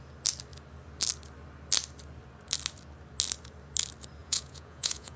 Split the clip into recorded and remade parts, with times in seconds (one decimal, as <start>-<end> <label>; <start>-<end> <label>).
0.0-4.2 recorded; 4.2-5.2 remade